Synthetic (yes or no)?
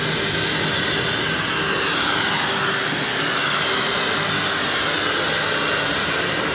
no